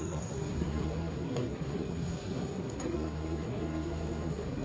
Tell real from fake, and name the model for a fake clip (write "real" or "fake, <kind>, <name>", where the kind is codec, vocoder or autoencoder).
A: fake, codec, SNAC